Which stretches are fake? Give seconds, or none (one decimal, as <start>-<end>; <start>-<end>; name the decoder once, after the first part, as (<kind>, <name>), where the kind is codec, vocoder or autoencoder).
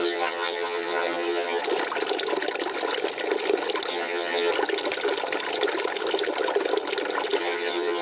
0.0-1.6 (vocoder, HiFi-GAN); 3.9-4.5; 7.4-8.0